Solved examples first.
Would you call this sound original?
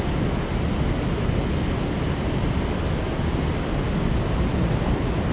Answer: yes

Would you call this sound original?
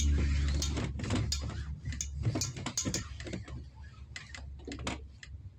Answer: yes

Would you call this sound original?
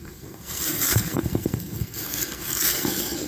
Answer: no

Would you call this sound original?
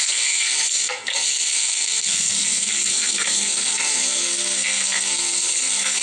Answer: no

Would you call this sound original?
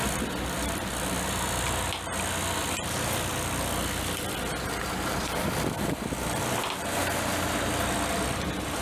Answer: yes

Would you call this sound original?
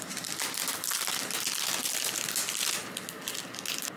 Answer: yes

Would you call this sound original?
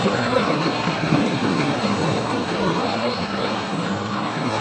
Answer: no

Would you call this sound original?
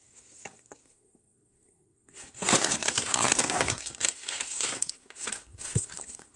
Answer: no